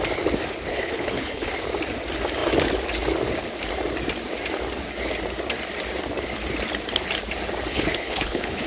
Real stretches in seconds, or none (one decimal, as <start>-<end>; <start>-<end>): 0.0-0.7; 1.5-7.7